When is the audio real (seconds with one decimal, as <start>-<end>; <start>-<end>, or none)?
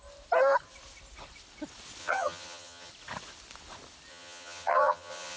0.0-2.0; 2.9-4.1